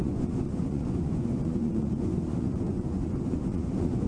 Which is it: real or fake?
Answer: fake